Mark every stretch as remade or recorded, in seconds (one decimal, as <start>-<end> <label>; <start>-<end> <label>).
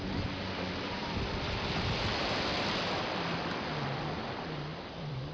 0.0-5.3 remade